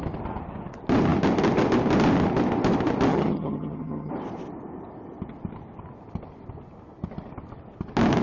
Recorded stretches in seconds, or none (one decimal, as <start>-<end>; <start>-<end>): 0.0-3.1; 4.1-8.2